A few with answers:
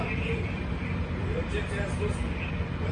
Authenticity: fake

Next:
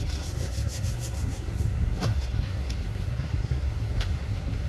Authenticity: fake